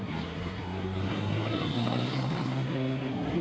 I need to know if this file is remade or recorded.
remade